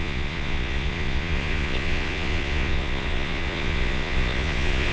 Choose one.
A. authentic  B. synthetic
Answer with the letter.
B